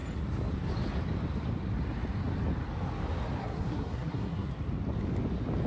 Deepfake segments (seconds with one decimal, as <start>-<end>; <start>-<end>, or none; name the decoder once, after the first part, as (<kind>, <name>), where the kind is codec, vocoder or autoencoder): 3.4-4.5 (codec, SNAC)